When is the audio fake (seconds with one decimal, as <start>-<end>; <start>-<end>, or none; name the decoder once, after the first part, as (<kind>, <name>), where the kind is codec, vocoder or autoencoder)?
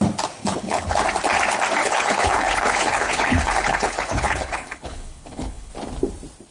0.4-1.0 (codec, HILCodec); 1.8-5.7